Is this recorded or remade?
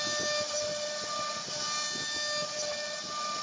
recorded